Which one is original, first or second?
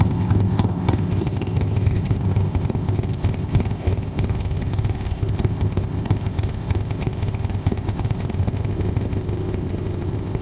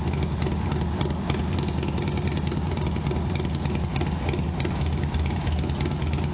second